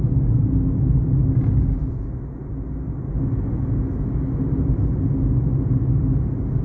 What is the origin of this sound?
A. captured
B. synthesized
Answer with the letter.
A